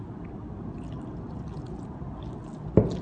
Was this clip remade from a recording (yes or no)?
no